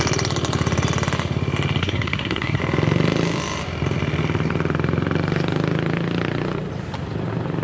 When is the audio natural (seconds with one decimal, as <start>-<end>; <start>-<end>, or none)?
0.0-1.8; 2.6-7.6